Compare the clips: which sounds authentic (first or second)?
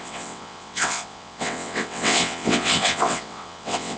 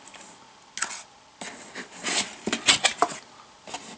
second